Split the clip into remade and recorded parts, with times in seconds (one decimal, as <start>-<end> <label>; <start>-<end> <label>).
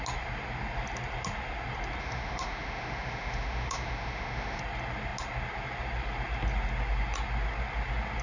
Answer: 0.0-2.0 recorded; 2.0-4.6 remade; 4.6-8.2 recorded